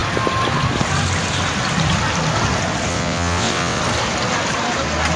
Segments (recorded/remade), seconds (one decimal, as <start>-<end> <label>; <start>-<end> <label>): 0.0-2.9 recorded; 2.9-3.8 remade; 3.8-5.2 recorded